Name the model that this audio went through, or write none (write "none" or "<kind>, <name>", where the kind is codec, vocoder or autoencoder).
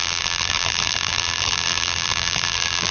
vocoder, BigVGAN v2